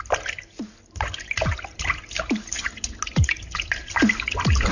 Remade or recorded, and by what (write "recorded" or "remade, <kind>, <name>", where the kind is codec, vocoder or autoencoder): recorded